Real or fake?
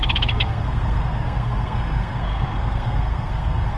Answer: fake